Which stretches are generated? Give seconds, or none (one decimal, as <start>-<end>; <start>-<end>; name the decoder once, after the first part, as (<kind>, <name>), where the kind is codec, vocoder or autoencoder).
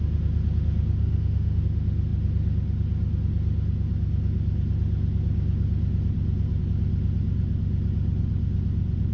1.0-1.6 (autoencoder, DAC-VAE)